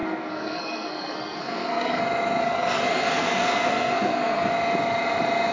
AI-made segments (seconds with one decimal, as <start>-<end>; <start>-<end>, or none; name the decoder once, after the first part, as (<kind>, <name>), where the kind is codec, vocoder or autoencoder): 0.0-2.0 (codec, SNAC); 2.4-4.5